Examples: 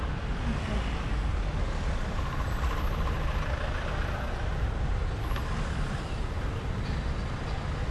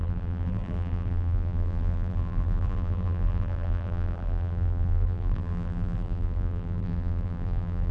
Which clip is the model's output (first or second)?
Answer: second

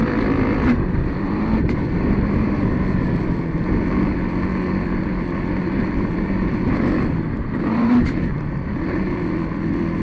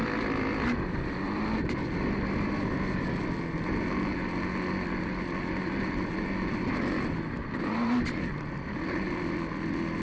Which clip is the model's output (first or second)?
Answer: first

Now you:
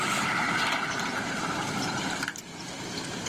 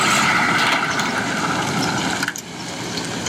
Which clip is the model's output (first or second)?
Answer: first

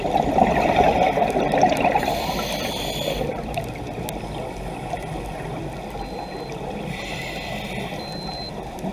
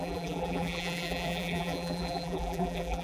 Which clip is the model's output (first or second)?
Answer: second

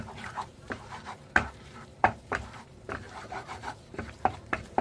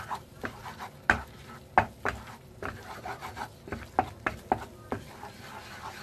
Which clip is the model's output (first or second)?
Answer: first